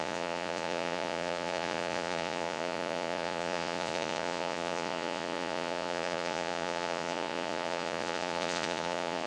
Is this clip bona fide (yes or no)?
no